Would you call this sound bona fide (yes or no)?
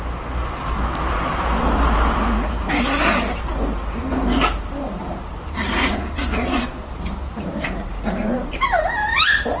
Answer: no